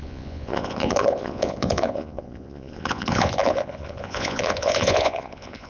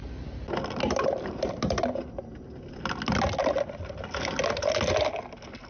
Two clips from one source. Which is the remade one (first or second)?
first